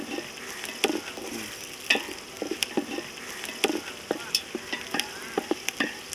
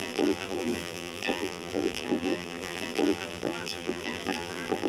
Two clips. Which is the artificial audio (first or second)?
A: second